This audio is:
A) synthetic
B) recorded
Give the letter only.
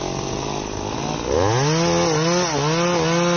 B